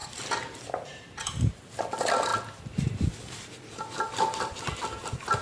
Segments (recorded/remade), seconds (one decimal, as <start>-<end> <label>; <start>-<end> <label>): 0.0-1.5 remade; 1.5-5.4 recorded